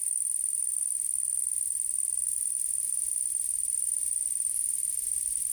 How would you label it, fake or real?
real